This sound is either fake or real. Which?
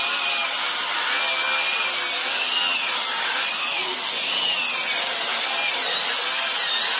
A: real